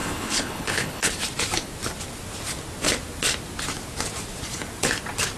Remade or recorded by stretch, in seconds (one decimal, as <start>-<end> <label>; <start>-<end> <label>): 0.0-1.1 remade; 1.1-5.4 recorded